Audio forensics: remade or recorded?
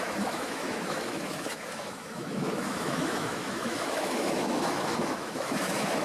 remade